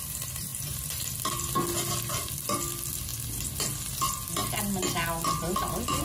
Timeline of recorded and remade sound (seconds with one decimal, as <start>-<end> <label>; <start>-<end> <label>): 0.0-6.0 recorded